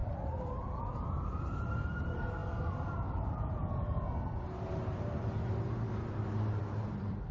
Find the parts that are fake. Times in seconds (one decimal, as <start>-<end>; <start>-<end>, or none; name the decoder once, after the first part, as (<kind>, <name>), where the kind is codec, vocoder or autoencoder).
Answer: 0.0-2.4 (vocoder, BigVGAN v2); 3.1-7.3